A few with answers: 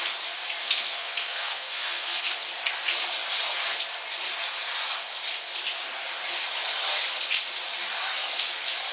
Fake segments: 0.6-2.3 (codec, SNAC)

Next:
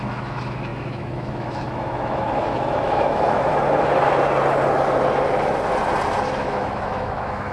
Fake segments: 0.0-3.5 (autoencoder, DAC-VAE); 6.3-7.5